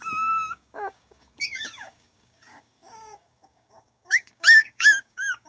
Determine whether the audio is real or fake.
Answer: fake